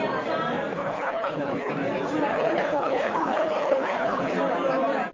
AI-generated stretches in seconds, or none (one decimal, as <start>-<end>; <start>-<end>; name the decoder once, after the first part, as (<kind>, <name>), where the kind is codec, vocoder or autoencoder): 0.7-1.7 (codec, HILCodec); 2.3-4.3